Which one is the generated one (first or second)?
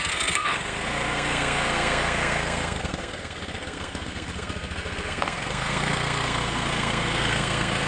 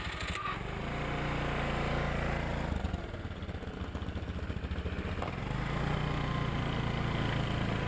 first